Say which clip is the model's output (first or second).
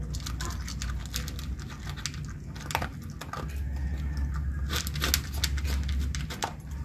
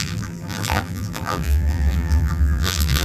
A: second